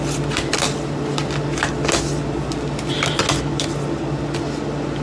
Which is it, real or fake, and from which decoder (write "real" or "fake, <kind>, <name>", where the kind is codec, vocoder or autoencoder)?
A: real